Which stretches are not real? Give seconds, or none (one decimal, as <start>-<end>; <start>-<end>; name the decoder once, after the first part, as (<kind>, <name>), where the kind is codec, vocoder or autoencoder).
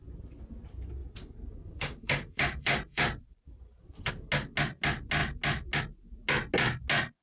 1.0-4.1 (vocoder, BigVGAN v2)